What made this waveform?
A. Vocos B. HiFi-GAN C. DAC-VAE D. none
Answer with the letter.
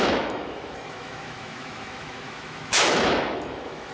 C